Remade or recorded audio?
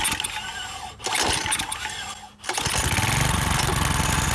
recorded